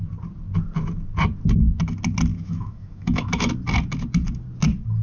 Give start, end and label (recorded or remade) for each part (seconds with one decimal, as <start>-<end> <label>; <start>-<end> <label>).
0.0-2.3 recorded; 2.3-3.5 remade; 3.5-5.0 recorded